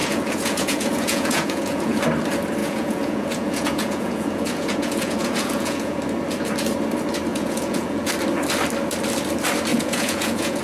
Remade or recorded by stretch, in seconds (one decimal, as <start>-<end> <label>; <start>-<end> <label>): 0.0-2.0 remade; 2.0-2.6 recorded; 2.6-6.0 remade; 6.0-7.3 recorded; 7.3-8.1 remade; 8.1-9.7 recorded; 9.7-10.6 remade